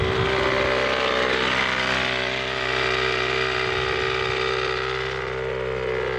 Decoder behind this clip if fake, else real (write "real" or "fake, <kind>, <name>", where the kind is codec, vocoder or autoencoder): real